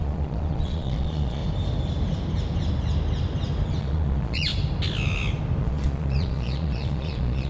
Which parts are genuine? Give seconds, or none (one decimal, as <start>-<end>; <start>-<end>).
1.4-3.8; 4.5-5.6